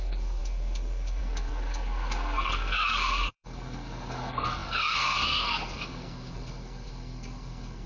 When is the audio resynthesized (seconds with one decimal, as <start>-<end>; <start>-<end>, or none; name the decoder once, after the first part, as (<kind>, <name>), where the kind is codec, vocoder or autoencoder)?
0.0-7.9 (codec, SNAC)